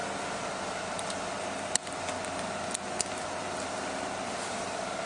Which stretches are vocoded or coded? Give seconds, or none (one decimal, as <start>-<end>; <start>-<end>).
3.0-5.1